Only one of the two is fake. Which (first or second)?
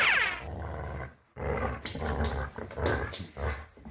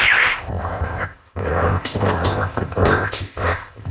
second